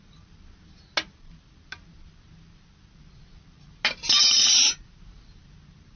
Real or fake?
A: real